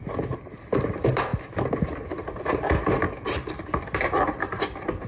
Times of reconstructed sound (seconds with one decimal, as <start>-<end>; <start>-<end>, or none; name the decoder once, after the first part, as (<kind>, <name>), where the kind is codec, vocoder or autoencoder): none